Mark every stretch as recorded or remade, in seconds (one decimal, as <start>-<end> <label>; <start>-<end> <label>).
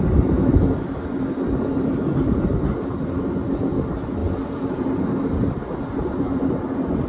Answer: 0.0-7.1 recorded